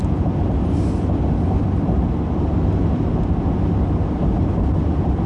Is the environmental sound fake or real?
real